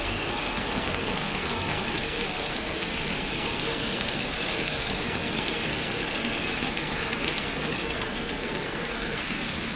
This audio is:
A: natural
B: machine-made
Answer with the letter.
B